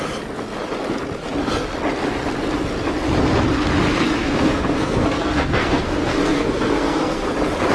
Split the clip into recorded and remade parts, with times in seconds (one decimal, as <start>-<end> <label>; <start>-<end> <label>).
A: 0.0-4.2 recorded; 4.2-7.3 remade; 7.3-7.7 recorded